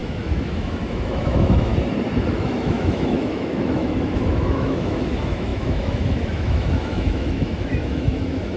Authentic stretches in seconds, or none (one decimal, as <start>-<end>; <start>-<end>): 1.7-2.3